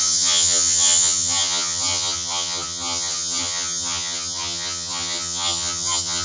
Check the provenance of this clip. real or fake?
fake